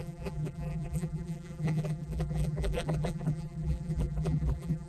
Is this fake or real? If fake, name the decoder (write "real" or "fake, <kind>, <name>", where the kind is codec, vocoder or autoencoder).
fake, vocoder, BigVGAN v2